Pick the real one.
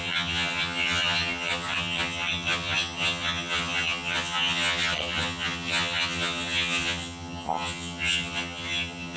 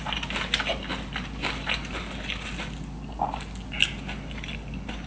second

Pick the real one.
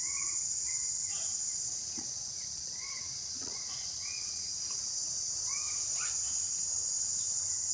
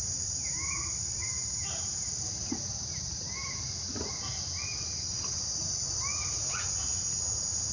second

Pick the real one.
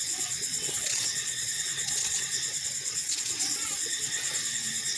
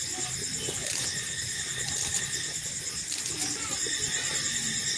second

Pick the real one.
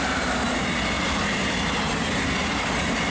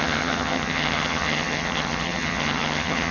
first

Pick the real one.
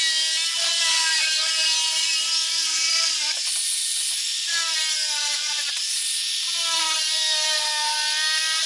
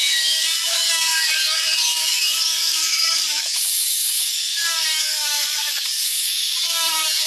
first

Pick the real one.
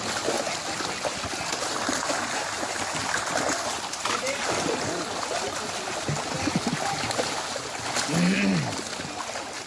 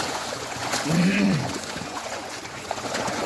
first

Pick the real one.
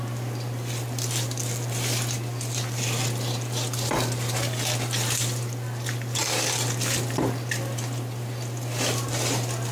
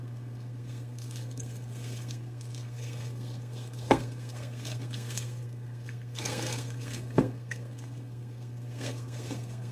first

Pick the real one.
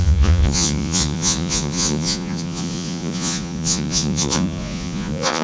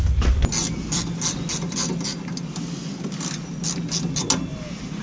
second